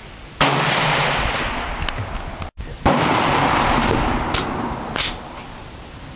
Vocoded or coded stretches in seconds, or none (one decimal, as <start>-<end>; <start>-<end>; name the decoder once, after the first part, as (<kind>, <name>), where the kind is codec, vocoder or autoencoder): none